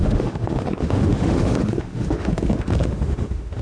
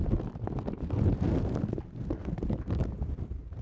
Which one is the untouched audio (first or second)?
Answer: second